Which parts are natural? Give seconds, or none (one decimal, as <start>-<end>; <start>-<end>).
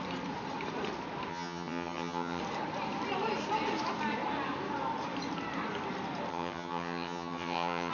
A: 0.0-1.3; 2.4-6.3